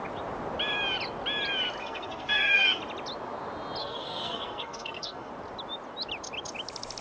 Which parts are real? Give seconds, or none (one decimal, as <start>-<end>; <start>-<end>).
0.0-1.8; 2.8-3.8; 5.3-7.0